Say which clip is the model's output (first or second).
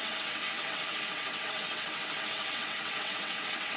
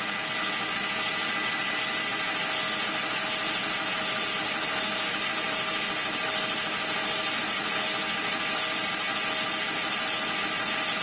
first